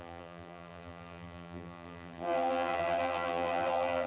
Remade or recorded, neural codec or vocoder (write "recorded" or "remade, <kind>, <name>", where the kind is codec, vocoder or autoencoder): remade, vocoder, BigVGAN v2